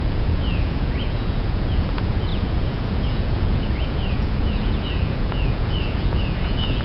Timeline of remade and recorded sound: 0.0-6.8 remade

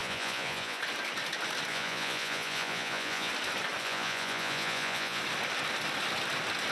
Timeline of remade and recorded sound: 0.0-0.8 remade; 0.8-1.7 recorded; 1.7-3.3 remade; 3.3-3.8 recorded; 3.8-5.2 remade; 5.2-6.7 recorded

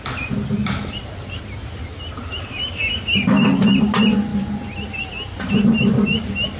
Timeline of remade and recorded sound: 0.0-6.6 recorded

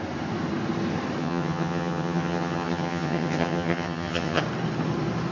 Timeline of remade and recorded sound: 0.0-1.2 recorded; 1.2-4.4 remade; 4.4-5.3 recorded